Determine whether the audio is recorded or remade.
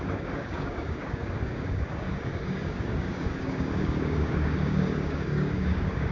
remade